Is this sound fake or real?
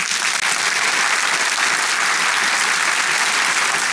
real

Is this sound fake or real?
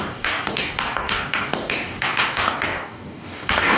fake